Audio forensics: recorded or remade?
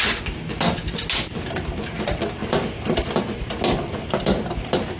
recorded